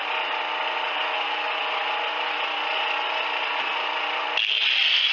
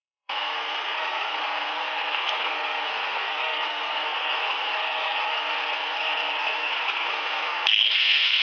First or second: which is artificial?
second